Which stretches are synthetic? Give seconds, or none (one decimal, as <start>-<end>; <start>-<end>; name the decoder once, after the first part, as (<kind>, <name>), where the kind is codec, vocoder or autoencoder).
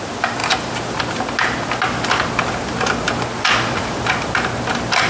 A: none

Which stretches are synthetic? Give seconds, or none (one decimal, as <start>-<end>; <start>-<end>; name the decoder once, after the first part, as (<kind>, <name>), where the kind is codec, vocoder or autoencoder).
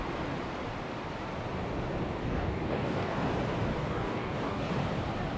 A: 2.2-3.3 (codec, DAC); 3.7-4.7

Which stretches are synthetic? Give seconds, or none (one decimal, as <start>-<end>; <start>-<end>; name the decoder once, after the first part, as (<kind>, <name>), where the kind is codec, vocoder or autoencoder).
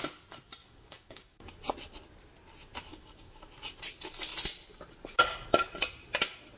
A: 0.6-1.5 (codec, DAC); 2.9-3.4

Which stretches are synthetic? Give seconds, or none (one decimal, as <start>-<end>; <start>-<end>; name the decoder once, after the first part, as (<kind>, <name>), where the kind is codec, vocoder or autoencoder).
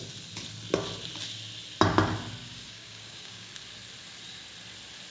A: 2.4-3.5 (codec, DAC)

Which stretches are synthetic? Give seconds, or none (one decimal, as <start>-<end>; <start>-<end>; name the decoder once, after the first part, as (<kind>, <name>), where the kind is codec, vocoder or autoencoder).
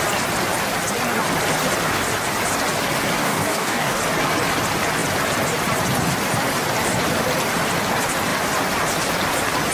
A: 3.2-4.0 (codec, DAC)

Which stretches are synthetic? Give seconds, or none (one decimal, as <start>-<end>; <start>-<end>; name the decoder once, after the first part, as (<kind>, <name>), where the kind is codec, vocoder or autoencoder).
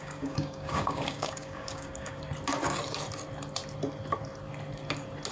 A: 0.0-2.2 (codec, DAC)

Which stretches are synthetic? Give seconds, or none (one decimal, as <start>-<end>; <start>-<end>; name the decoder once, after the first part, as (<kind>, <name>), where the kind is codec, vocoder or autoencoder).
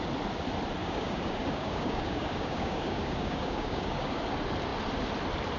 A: 0.8-4.2 (codec, DAC)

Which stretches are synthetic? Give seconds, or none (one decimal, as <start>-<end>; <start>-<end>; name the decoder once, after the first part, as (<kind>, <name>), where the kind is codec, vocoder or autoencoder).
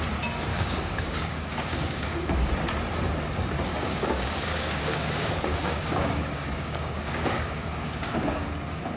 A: 0.5-2.5 (codec, DAC); 3.7-8.5